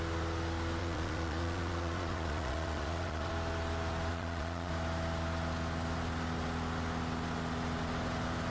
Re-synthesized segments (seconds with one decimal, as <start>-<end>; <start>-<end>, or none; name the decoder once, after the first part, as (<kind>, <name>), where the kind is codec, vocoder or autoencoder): 0.8-3.3 (vocoder, Vocos); 4.1-4.7